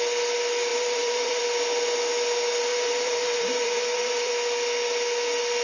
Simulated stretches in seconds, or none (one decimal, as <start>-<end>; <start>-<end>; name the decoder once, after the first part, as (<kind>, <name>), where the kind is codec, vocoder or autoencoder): 0.7-1.4 (vocoder, BigVGAN v2); 2.7-4.3